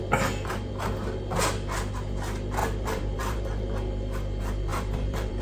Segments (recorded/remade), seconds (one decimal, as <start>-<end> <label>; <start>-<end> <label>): 0.0-2.6 recorded; 2.6-3.7 remade; 3.7-4.7 recorded; 4.7-5.4 remade